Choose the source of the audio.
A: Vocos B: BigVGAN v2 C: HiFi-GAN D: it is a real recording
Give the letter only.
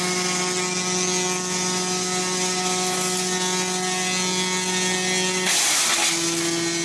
D